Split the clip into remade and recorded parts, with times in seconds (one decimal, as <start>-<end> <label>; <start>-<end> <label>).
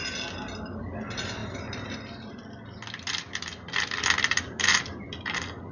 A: 0.0-5.7 recorded